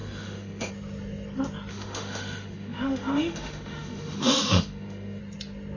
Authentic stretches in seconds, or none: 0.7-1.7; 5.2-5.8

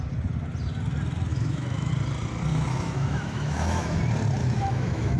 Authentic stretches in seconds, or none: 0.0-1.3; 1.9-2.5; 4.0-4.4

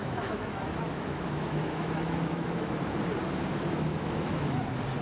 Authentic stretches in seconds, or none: 3.0-3.5; 4.6-5.0